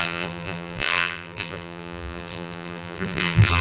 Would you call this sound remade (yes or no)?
yes